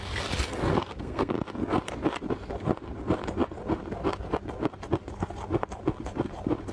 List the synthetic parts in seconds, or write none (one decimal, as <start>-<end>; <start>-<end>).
0.7-1.3